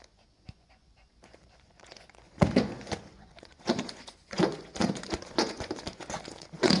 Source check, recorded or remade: remade